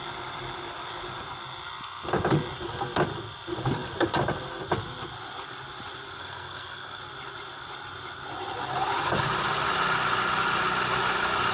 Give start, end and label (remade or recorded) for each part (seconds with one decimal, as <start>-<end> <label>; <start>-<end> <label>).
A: 0.0-6.2 recorded; 6.2-7.0 remade; 7.0-11.5 recorded